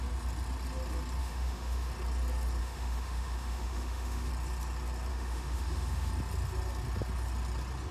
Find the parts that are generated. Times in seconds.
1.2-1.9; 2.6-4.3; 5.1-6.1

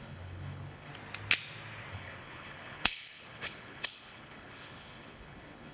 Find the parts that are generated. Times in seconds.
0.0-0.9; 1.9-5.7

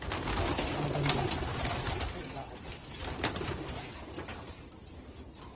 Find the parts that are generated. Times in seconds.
none

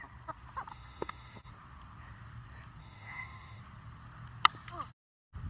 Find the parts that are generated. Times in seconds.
0.7-1.5; 2.8-3.6